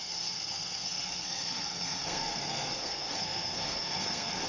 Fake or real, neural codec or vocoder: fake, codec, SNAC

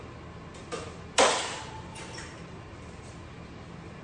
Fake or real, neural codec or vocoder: real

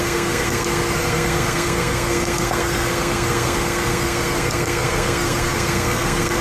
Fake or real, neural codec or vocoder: fake, codec, SNAC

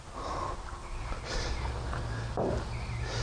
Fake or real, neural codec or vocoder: real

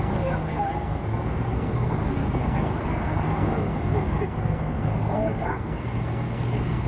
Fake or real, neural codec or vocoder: fake, codec, SNAC